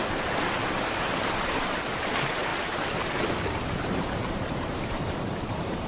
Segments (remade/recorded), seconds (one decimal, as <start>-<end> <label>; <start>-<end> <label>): 0.0-5.9 remade